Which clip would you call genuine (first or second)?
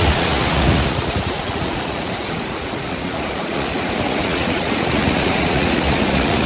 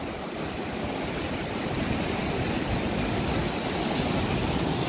second